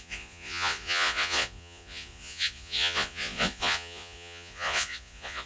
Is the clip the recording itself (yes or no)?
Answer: no